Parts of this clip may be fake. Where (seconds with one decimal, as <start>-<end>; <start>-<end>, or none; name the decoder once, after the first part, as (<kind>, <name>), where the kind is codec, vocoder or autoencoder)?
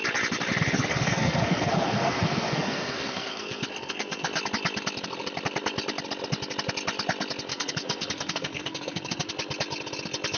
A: 0.9-4.4 (codec, SNAC); 7.5-9.3